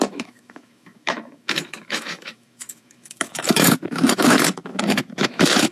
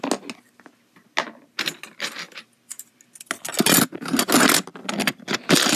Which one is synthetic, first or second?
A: first